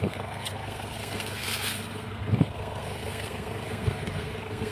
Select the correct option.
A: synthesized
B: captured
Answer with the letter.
A